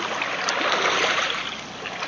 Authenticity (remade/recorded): recorded